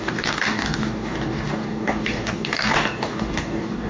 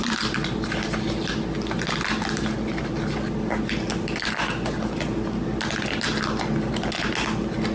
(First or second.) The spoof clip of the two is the first